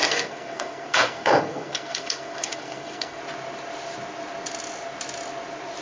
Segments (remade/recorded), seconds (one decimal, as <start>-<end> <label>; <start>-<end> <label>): 0.0-3.2 remade; 3.2-5.8 recorded